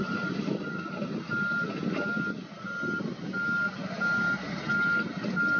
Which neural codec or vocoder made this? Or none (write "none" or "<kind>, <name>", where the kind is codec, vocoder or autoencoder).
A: none